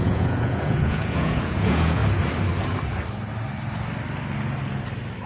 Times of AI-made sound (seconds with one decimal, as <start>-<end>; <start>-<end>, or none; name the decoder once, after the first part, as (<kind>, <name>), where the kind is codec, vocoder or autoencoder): 0.0-2.0 (vocoder, Vocos)